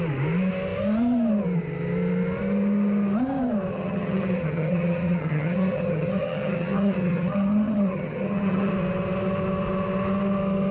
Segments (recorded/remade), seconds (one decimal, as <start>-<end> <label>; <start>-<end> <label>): 0.0-3.7 recorded; 3.7-8.7 remade; 8.7-10.7 recorded